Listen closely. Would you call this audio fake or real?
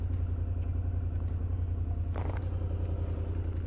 real